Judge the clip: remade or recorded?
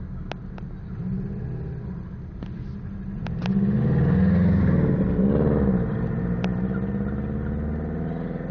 recorded